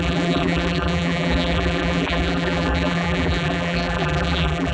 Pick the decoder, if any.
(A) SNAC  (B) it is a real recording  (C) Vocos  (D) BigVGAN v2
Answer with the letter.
D